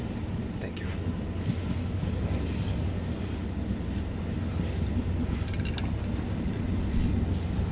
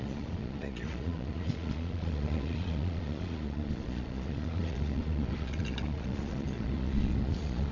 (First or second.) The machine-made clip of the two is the second